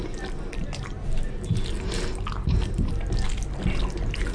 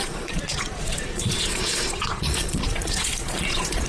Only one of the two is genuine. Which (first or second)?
first